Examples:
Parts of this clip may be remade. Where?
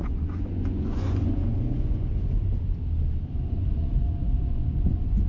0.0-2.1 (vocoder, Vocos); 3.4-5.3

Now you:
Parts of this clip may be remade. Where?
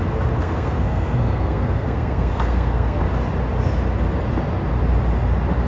0.4-3.0 (codec, SNAC)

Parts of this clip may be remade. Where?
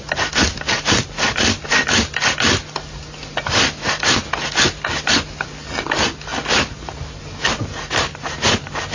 none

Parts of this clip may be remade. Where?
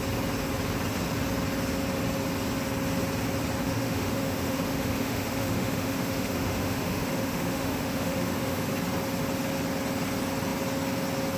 3.6-8.7 (autoencoder, DAC-VAE)